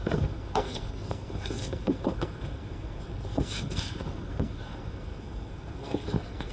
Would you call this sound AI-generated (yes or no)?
yes